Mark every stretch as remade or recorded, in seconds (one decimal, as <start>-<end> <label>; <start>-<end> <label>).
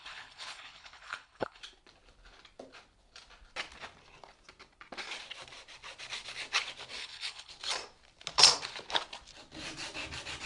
0.0-1.6 remade; 1.6-7.0 recorded; 7.0-7.5 remade; 7.5-10.5 recorded